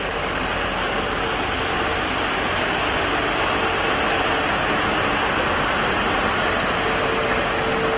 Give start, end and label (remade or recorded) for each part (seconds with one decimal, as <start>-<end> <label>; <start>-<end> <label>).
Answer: 0.0-8.0 recorded